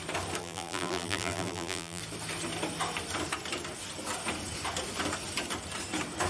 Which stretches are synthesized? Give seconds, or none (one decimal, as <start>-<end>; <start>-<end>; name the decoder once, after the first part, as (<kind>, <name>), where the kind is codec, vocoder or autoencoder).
0.4-2.0 (vocoder, BigVGAN v2)